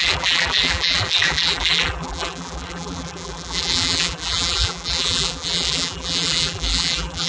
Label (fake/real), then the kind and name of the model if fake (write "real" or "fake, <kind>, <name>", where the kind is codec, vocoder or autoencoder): fake, vocoder, BigVGAN v2